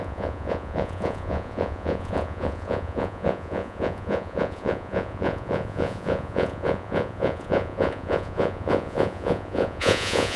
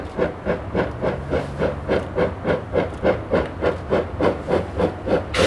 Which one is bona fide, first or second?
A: second